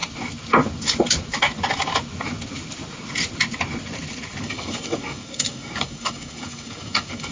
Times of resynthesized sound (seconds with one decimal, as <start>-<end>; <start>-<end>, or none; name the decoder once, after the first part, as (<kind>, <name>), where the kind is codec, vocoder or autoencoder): 4.4-7.3 (codec, DAC)